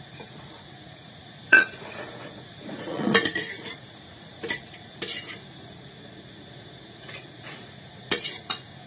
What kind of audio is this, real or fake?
fake